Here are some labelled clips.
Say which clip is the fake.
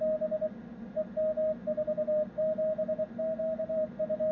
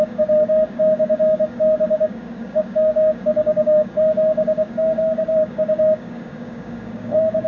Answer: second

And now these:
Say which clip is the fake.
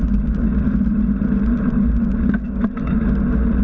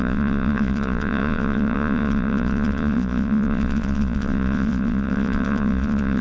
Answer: second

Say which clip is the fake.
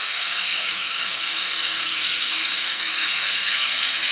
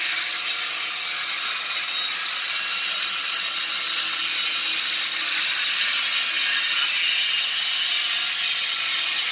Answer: first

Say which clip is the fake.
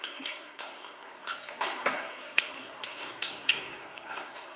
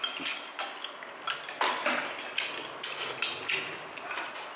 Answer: first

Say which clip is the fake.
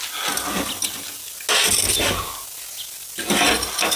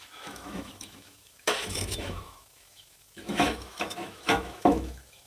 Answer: second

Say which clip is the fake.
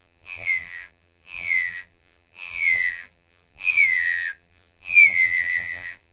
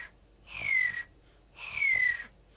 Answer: first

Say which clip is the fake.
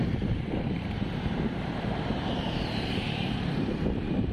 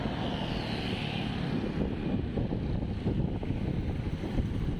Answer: first